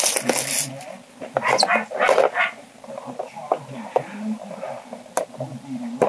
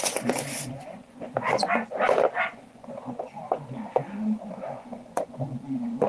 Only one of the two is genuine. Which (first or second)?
first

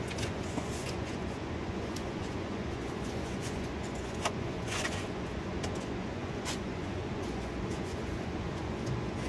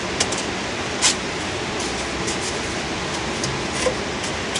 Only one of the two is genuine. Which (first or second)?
second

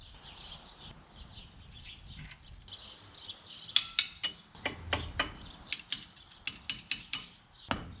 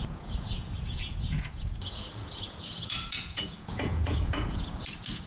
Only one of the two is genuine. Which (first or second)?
first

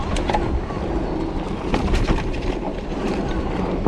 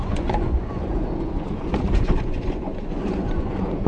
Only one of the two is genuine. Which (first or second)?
first